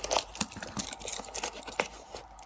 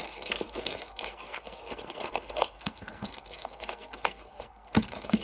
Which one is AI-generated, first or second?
second